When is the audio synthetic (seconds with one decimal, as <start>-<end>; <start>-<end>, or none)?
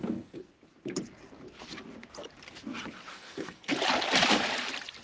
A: 0.0-0.5; 3.1-3.7